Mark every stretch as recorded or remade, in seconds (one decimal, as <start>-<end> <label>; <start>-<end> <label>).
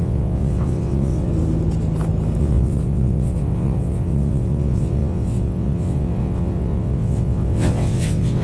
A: 0.0-1.3 remade; 1.3-2.4 recorded; 2.4-8.4 remade